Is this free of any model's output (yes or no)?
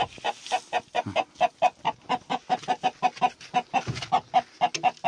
yes